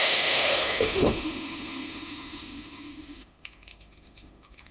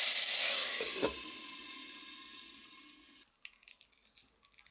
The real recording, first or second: second